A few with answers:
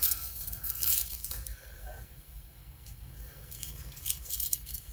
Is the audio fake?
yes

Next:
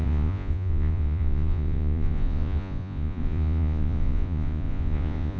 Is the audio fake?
yes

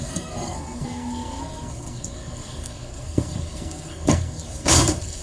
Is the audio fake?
yes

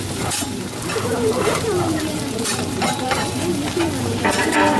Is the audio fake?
yes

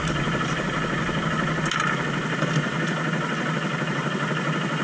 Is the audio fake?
no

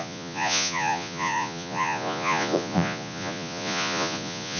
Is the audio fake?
yes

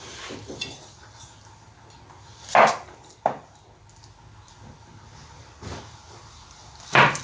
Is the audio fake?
no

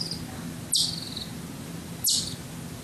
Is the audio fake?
no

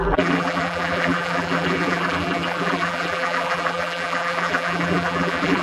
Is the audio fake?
yes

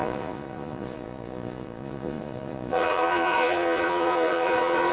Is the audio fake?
yes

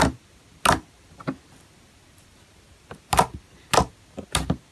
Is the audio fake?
no